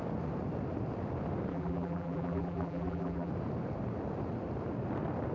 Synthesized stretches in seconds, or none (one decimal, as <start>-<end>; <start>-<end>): 1.5-3.3